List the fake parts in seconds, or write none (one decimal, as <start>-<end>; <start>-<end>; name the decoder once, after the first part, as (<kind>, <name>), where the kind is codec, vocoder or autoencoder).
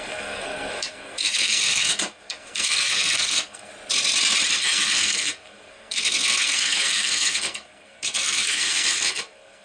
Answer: 0.0-3.7 (codec, SNAC); 4.5-9.6